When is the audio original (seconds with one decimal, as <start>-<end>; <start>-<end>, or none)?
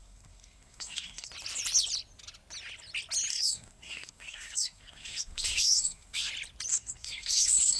1.3-3.3; 6.3-6.7